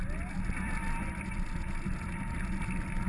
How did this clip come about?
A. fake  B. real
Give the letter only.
B